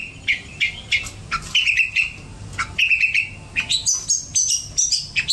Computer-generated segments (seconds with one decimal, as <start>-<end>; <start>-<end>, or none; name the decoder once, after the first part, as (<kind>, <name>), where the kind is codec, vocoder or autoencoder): none